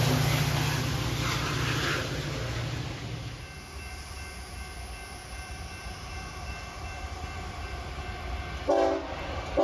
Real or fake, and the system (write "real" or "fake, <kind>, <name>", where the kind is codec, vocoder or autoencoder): real